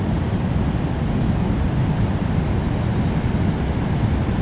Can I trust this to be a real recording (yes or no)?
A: yes